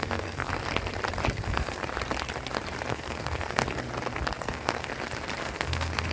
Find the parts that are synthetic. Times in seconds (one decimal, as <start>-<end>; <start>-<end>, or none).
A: 0.0-0.5; 1.3-1.8; 2.9-3.6; 4.4-4.9; 5.4-6.1